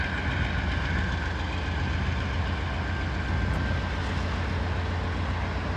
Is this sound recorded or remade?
recorded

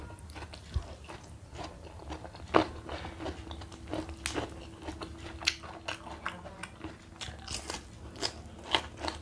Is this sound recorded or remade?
recorded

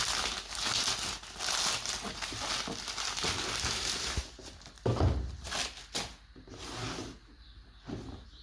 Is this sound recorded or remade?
recorded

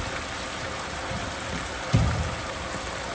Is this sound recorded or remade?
recorded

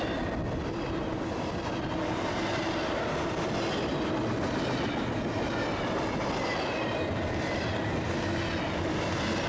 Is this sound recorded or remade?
recorded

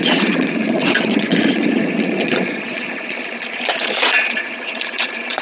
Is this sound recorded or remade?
remade